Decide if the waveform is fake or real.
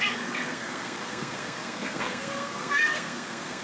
fake